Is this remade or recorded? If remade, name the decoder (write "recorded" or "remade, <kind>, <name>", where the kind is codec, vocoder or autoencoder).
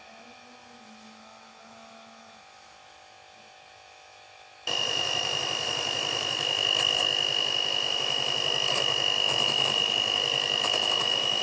remade, autoencoder, DAC-VAE